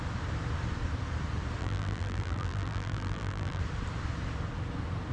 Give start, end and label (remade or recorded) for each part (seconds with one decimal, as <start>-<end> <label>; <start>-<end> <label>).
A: 0.0-1.6 recorded; 1.6-3.6 remade; 3.6-5.1 recorded

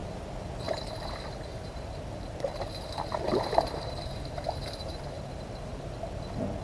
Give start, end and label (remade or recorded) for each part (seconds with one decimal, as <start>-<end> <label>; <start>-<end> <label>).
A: 0.0-1.5 recorded; 1.5-5.2 remade; 5.2-6.6 recorded

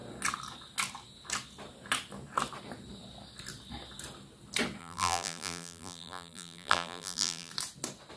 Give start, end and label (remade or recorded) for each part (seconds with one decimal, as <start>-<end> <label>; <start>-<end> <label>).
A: 0.0-4.8 recorded; 4.8-7.5 remade; 7.5-8.2 recorded

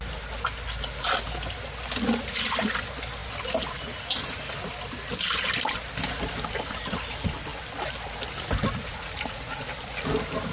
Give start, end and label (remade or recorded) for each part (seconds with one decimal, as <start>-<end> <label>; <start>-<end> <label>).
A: 0.0-8.9 recorded; 8.9-9.6 remade; 9.6-10.5 recorded

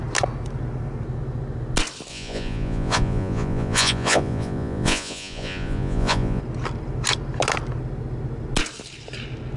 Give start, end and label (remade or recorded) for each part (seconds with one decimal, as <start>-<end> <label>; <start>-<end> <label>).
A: 0.0-2.1 recorded; 2.1-6.4 remade; 6.4-9.6 recorded